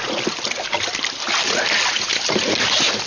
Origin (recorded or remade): recorded